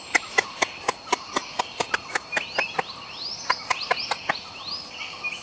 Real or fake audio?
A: real